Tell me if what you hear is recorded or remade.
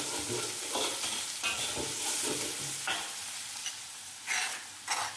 recorded